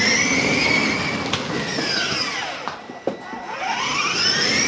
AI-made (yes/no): no